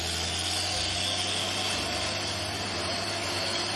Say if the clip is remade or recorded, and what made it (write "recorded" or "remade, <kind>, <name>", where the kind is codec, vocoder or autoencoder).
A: recorded